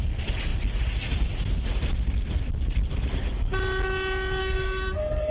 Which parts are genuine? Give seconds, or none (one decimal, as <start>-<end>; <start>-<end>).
0.0-4.4